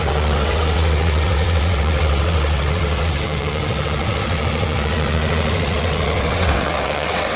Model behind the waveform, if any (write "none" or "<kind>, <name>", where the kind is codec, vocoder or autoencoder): vocoder, WaveNeXt